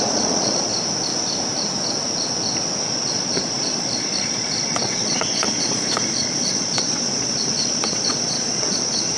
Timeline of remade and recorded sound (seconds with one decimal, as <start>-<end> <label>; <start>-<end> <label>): 0.0-0.7 remade; 0.7-2.8 recorded; 2.8-9.2 remade